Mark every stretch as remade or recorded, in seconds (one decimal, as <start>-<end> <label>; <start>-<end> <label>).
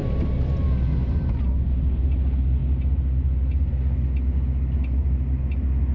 0.0-5.9 recorded